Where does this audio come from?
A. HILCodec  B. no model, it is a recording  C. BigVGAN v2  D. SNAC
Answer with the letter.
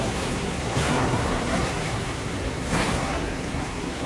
D